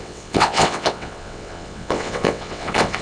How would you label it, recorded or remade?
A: remade